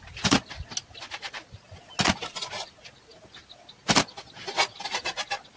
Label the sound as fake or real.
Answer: real